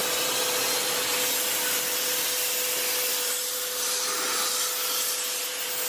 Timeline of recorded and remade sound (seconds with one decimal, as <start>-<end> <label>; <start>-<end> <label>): 0.0-1.2 remade; 1.2-3.1 recorded; 3.1-4.5 remade; 4.5-5.9 recorded